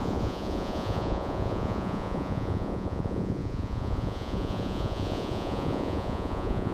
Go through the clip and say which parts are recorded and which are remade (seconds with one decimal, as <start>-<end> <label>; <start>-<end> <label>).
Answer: 0.0-6.7 remade